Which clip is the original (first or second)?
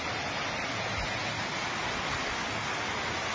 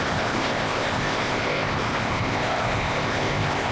first